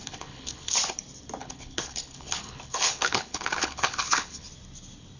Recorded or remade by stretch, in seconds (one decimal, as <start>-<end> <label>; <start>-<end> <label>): 0.0-0.7 remade; 0.7-1.4 recorded; 1.4-4.5 remade; 4.5-5.2 recorded